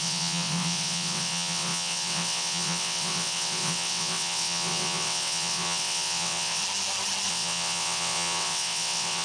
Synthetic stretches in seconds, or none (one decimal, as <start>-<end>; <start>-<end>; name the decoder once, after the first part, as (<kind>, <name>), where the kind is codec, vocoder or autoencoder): 0.0-6.6 (vocoder, WaveNeXt); 7.3-9.2